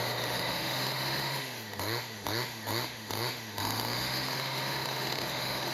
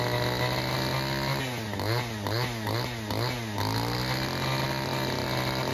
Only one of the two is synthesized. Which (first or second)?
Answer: first